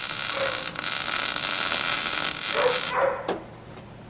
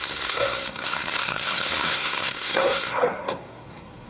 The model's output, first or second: second